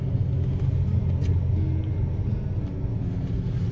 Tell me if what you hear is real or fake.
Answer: real